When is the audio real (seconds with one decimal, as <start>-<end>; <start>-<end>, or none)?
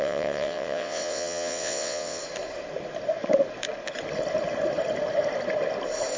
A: 2.2-6.2